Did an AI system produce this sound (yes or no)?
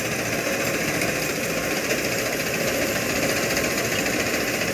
yes